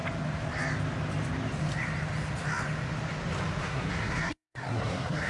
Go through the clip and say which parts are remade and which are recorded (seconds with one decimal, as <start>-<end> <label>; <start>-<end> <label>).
0.0-3.6 recorded; 3.6-5.3 remade